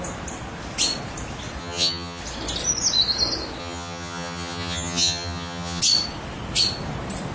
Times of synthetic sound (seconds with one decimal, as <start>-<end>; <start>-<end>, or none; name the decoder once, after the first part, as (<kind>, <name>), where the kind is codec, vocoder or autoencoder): 1.6-2.2 (vocoder, HiFi-GAN); 3.6-5.8